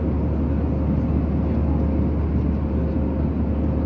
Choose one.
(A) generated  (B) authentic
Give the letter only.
B